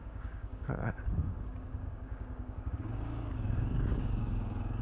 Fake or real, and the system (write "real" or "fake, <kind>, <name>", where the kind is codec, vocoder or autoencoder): fake, codec, DAC